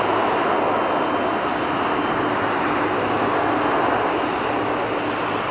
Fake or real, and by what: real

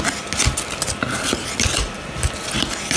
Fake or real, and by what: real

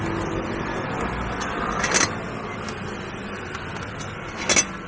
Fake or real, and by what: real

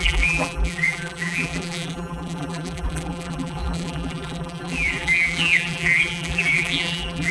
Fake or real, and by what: fake, vocoder, BigVGAN v2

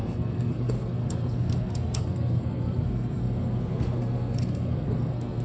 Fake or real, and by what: fake, codec, SNAC